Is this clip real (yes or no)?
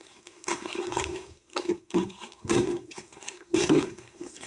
no